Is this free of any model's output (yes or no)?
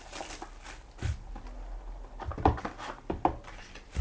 yes